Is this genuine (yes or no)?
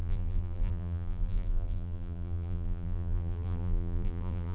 no